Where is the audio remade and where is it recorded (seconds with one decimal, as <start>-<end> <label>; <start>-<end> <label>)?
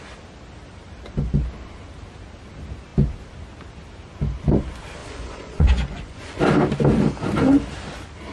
0.0-5.0 recorded; 5.0-6.4 remade; 6.4-8.3 recorded